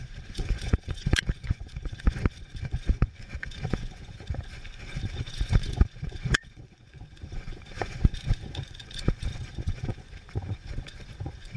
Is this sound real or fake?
fake